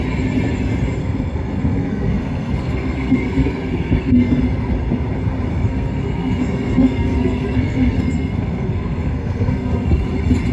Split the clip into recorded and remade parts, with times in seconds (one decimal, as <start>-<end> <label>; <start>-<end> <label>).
0.0-1.0 recorded; 1.0-4.4 remade; 4.4-5.5 recorded; 5.5-10.0 remade; 10.0-10.5 recorded